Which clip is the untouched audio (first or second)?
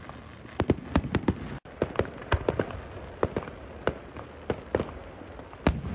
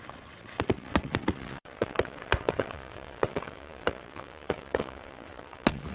first